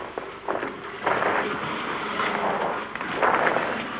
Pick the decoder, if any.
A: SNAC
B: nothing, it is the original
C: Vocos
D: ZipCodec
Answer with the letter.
B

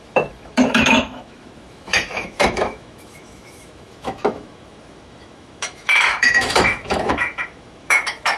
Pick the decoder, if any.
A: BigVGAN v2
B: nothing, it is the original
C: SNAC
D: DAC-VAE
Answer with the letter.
D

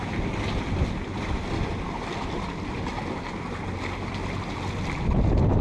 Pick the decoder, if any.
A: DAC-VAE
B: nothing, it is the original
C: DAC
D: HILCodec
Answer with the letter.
B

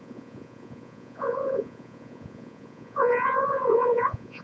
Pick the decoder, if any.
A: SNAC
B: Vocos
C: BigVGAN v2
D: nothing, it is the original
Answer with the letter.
B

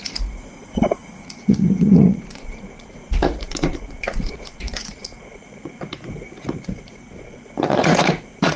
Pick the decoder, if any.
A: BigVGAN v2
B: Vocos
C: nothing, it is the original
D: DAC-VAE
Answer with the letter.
B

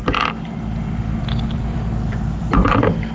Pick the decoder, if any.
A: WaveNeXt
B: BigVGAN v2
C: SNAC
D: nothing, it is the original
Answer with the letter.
B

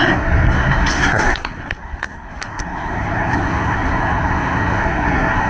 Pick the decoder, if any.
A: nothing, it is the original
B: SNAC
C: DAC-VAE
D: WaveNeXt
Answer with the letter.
B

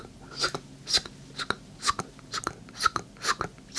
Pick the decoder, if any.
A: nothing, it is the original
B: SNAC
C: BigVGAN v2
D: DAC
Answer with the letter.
A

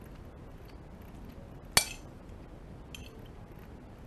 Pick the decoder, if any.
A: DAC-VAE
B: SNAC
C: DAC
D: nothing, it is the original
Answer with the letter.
D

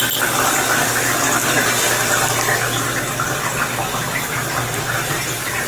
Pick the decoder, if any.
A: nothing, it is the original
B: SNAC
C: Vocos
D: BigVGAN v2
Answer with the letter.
A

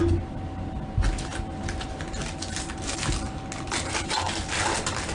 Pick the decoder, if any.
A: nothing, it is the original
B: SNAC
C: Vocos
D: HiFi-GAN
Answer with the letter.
A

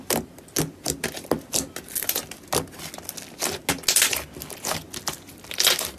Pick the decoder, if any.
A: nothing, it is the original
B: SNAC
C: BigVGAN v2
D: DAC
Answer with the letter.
A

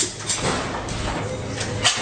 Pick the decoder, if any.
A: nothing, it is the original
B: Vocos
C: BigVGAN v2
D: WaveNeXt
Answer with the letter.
A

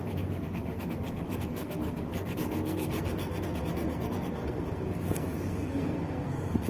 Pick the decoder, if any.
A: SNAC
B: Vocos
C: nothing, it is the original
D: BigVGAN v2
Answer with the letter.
A